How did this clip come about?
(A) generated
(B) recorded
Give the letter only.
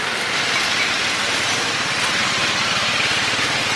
B